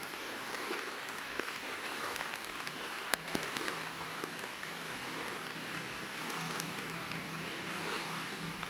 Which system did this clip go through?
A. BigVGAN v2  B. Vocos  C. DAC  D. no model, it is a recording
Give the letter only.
C